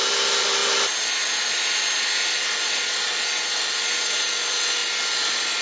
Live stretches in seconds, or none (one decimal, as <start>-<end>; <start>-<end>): 0.6-4.0; 4.8-5.6